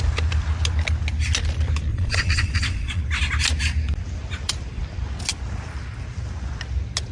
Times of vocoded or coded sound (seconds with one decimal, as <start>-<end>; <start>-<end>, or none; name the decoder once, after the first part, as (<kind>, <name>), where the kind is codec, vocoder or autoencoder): 1.9-3.0 (vocoder, Vocos)